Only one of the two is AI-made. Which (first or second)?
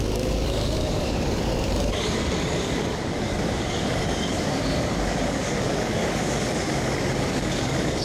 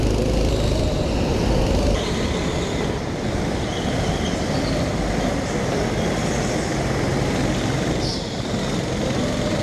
first